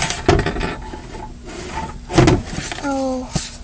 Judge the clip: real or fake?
real